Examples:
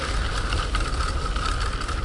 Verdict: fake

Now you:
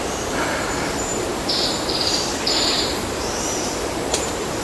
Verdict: fake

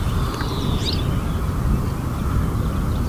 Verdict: real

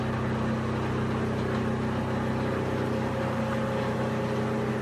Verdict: real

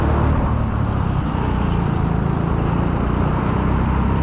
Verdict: real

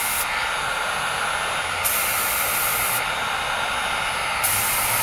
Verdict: real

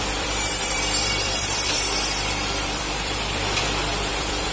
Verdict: fake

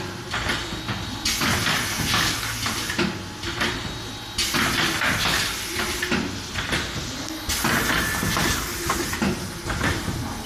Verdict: real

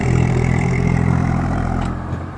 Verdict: fake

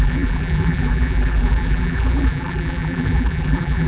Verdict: fake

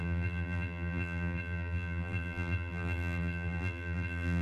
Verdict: fake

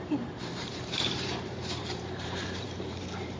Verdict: fake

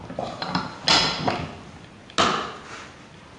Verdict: real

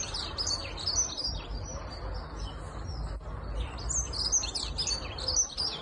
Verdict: real